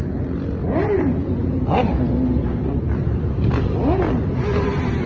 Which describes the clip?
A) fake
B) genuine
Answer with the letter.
B